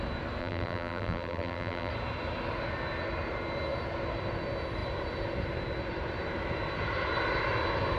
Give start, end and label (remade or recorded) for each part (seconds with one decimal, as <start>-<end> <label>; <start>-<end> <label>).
0.0-0.4 recorded; 0.4-1.9 remade; 1.9-8.0 recorded